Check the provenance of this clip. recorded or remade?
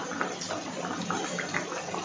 recorded